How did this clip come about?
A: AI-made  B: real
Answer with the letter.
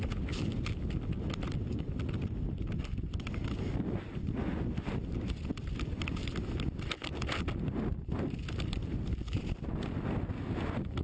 B